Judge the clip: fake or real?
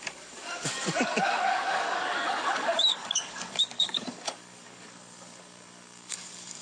fake